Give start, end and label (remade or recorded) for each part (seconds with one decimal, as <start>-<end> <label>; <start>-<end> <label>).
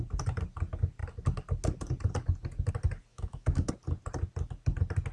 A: 0.0-3.1 recorded; 3.1-3.7 remade; 3.7-5.1 recorded